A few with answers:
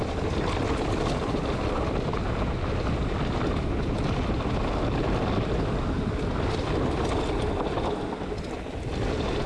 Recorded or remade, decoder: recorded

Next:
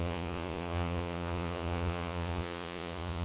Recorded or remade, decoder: remade, vocoder, Vocos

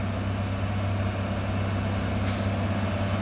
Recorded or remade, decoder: recorded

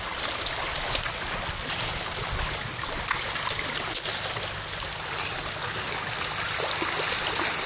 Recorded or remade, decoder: recorded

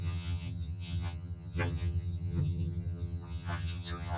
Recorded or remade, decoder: remade, vocoder, HiFi-GAN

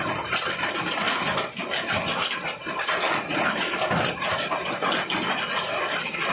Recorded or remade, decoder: recorded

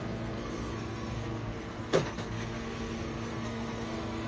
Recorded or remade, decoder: remade, codec, SNAC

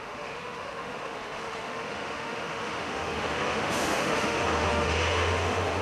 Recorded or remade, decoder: remade, autoencoder, DAC-VAE